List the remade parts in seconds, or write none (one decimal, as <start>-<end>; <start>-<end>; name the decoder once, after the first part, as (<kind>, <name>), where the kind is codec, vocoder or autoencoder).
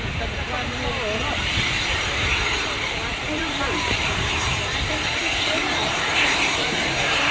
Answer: 0.0-0.9 (vocoder, BigVGAN v2); 1.4-2.3; 2.8-5.2; 5.7-7.3